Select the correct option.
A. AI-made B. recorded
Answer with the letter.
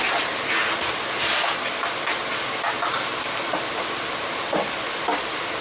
B